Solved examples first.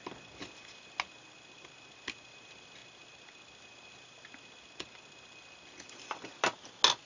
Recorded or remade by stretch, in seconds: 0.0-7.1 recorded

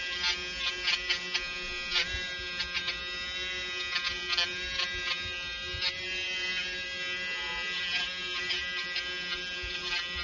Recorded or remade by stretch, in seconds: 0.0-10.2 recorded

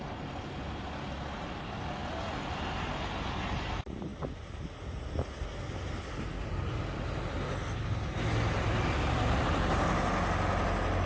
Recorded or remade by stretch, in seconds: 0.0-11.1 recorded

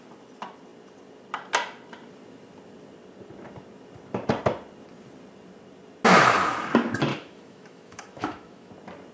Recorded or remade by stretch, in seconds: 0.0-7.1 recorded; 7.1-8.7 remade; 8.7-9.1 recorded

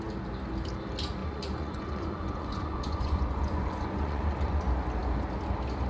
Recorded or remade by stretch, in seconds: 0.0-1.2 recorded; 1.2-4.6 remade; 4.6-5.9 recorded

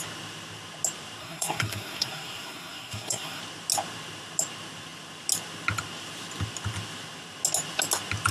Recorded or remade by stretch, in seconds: 0.0-1.2 recorded; 1.2-3.4 remade; 3.4-8.3 recorded

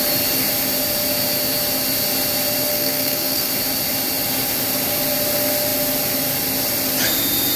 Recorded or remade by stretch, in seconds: 0.0-2.7 recorded; 2.7-3.5 remade; 3.5-7.6 recorded

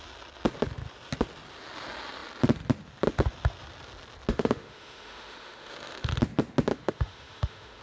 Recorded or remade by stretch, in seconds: 0.0-4.3 recorded; 4.3-6.1 remade; 6.1-6.7 recorded; 6.7-7.8 remade